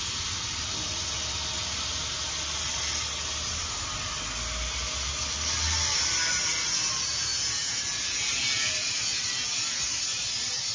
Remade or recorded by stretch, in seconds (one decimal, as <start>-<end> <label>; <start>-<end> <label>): 0.0-10.7 recorded